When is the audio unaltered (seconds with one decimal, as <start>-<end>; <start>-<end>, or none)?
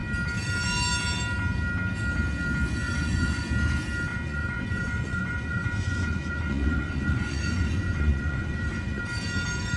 0.0-2.8; 3.4-4.1; 9.0-9.8